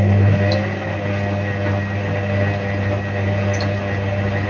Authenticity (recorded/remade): recorded